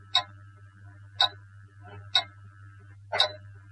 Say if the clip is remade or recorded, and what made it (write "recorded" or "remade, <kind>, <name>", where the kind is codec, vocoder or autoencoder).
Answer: recorded